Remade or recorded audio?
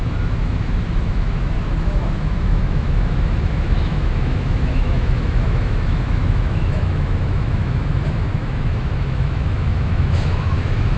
remade